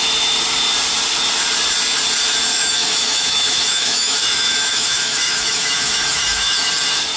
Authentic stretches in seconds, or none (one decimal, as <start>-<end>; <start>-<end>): 0.0-2.5; 6.7-7.2

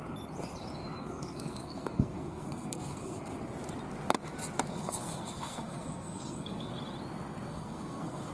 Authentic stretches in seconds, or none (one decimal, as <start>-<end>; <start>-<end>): 0.0-1.0; 3.2-4.7; 6.7-7.5

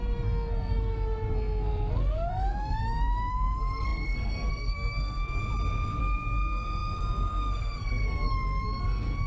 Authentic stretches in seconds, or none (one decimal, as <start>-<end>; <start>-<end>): 5.4-6.0

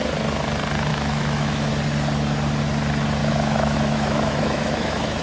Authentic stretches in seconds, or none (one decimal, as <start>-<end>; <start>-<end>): 0.0-0.9; 1.7-3.2

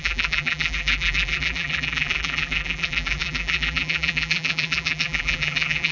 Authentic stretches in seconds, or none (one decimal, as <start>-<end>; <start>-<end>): none

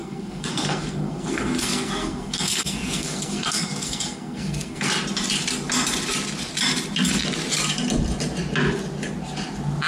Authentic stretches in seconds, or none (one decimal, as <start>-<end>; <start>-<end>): 4.9-9.9

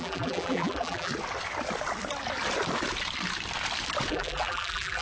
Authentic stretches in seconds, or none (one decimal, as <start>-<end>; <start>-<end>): 1.1-4.1

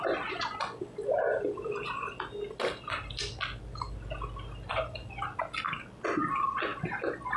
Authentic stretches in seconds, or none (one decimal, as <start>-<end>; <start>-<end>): 0.0-7.4